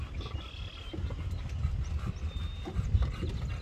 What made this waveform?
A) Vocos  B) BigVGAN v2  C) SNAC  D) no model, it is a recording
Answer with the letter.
D